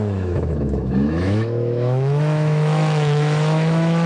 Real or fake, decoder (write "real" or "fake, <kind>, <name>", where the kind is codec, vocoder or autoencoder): fake, autoencoder, DAC-VAE